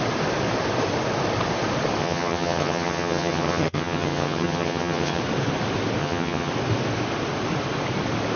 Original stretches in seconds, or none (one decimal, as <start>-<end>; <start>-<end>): 0.0-2.0; 5.2-6.0; 6.5-8.4